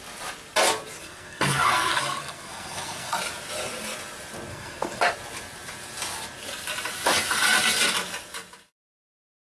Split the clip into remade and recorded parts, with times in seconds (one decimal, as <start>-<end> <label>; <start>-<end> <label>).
0.0-1.0 recorded; 1.0-3.2 remade; 3.2-4.5 recorded; 4.5-5.0 remade; 5.0-9.6 recorded